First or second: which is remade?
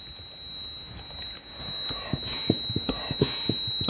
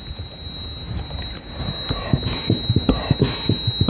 second